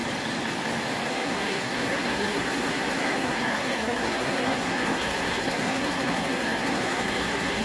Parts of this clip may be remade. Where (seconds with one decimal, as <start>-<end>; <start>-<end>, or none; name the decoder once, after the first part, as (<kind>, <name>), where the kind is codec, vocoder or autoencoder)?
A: 1.1-7.6 (codec, SNAC)